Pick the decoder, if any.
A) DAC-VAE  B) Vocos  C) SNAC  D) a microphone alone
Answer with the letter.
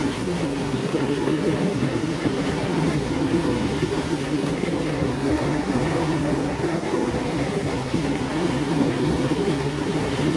C